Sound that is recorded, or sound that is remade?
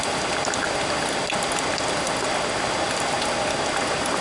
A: recorded